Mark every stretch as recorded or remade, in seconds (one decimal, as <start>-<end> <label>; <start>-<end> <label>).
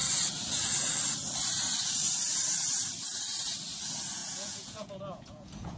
0.0-4.2 recorded; 4.2-5.8 remade